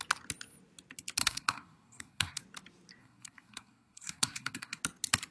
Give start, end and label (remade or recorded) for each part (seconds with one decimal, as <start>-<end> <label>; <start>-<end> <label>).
0.0-1.2 recorded; 1.2-2.4 remade; 2.4-3.0 recorded; 3.0-4.8 remade; 4.8-5.3 recorded